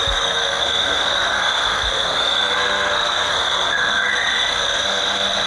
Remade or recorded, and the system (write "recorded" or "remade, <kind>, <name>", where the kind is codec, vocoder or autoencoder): remade, codec, SNAC